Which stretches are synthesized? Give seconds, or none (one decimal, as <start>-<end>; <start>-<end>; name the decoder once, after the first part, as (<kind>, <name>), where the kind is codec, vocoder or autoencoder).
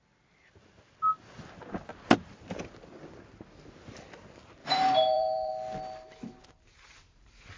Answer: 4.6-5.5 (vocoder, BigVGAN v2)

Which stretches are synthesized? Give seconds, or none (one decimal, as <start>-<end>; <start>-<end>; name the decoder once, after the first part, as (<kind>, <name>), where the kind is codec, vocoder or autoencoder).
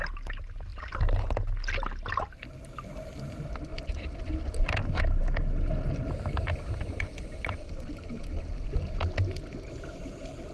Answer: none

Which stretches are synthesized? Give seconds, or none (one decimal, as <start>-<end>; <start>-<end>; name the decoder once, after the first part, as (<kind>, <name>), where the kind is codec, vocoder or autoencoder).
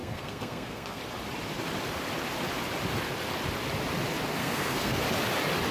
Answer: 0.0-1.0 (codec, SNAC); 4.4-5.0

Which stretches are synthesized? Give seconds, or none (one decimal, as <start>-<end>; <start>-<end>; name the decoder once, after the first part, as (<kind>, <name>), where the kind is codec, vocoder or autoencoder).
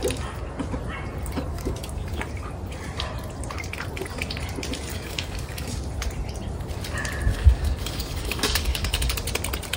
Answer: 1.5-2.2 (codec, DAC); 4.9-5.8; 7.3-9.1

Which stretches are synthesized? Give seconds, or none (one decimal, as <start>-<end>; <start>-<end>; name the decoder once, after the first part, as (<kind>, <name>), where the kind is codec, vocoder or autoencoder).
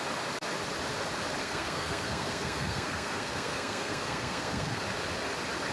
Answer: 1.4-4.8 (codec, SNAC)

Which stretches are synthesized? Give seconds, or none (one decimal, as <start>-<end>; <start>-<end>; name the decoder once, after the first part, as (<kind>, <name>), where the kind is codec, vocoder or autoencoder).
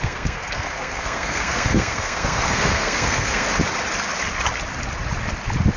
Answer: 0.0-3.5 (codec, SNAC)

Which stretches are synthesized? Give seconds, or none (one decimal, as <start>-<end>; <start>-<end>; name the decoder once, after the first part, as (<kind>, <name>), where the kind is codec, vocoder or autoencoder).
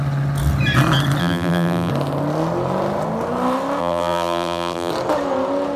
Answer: 1.2-1.9 (vocoder, BigVGAN v2); 3.8-4.9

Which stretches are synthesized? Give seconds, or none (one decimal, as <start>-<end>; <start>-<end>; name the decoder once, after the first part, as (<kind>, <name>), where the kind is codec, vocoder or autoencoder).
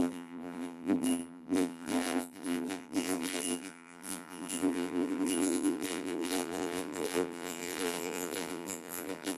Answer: 0.0-9.4 (vocoder, BigVGAN v2)